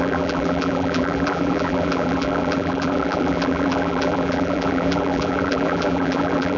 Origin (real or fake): fake